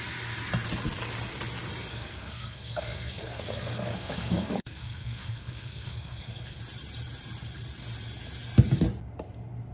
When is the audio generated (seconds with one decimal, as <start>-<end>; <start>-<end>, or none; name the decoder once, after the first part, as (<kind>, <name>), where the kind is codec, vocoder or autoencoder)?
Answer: 1.9-6.6 (codec, SNAC)